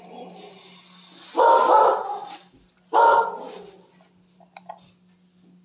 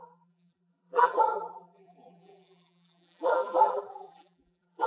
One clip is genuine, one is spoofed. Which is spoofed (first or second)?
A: second